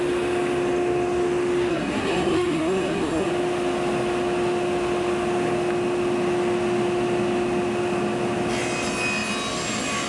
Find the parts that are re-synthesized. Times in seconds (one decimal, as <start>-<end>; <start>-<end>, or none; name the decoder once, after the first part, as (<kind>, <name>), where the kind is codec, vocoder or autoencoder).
1.7-3.3 (codec, SNAC)